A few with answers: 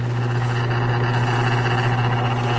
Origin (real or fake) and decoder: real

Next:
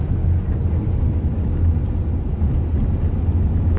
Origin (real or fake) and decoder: real